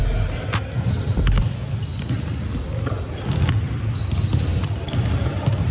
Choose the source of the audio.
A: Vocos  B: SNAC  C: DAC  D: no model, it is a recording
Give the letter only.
D